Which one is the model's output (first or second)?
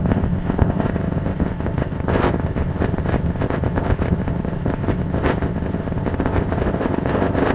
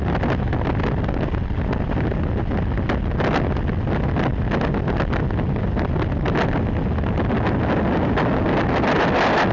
first